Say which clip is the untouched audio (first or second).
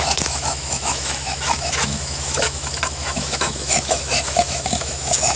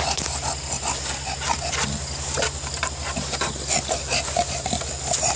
second